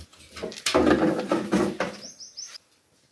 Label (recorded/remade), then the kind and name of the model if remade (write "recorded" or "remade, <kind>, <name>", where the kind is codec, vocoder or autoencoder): recorded